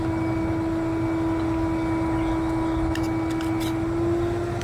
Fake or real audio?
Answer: real